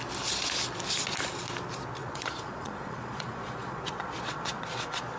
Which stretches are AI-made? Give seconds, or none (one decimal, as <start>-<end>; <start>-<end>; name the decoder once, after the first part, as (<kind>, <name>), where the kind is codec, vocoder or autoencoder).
2.0-5.2 (vocoder, Vocos)